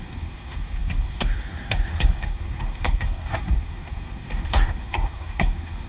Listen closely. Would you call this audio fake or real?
fake